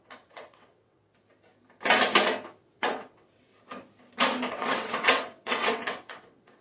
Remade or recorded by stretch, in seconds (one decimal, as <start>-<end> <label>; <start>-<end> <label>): 0.0-1.0 remade; 1.0-2.6 recorded; 2.6-3.5 remade; 3.5-4.5 recorded; 4.5-6.6 remade